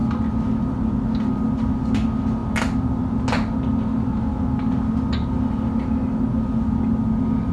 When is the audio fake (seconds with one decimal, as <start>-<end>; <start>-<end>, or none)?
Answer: none